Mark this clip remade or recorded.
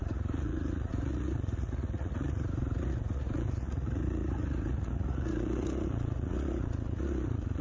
remade